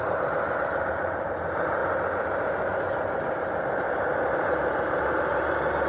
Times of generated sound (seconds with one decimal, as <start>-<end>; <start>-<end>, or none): 0.0-1.8; 5.2-5.9